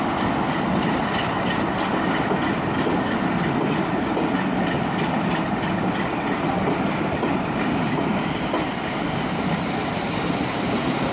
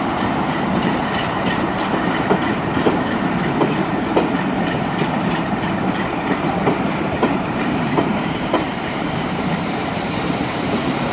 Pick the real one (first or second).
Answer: first